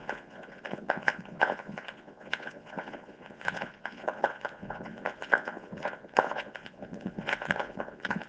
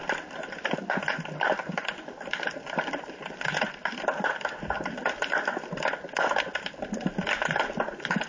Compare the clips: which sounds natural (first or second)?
second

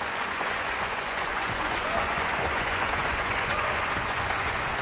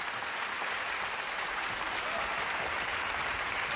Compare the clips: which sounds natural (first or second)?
second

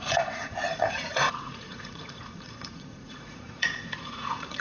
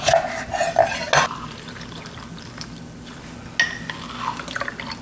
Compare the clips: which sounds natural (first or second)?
second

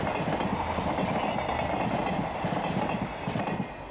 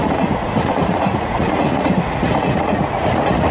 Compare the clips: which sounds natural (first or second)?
first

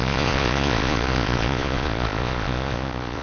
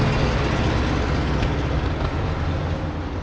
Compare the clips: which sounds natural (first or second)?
second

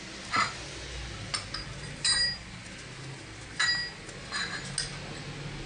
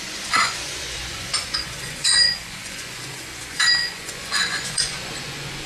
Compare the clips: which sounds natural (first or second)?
first